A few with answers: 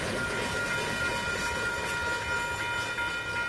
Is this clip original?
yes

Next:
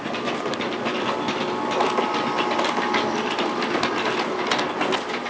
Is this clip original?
yes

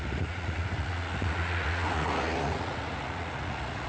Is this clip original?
no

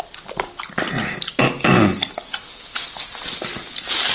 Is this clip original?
yes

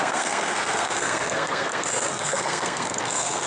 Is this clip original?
no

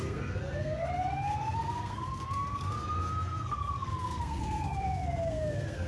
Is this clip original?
no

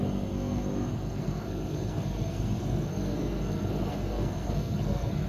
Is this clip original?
no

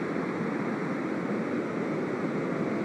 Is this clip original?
yes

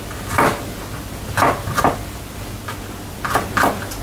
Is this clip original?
yes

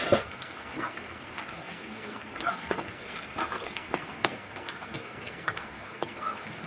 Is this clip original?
no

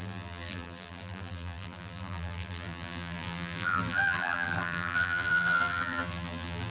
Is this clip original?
no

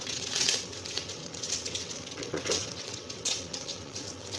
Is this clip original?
no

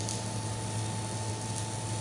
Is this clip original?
yes